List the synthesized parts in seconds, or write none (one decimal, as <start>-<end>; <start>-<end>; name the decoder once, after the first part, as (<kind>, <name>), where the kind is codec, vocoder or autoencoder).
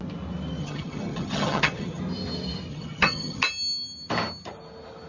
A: 0.6-2.0 (vocoder, HiFi-GAN); 2.7-3.4